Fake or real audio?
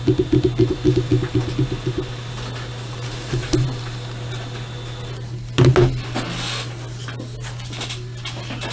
real